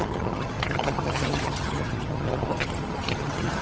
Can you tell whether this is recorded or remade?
remade